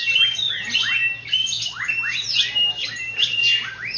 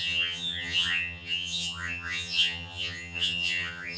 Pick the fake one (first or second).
second